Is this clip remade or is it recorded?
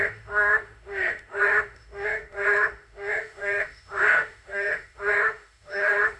remade